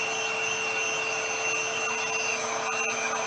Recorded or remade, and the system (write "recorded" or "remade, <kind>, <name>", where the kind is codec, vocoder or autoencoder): recorded